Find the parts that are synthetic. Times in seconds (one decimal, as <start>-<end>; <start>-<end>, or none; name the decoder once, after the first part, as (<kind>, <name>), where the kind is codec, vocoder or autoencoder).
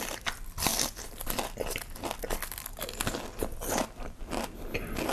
none